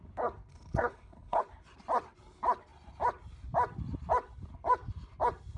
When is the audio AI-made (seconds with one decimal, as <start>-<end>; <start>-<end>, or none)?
0.5-1.4